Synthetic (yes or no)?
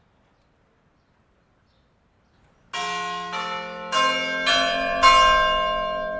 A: no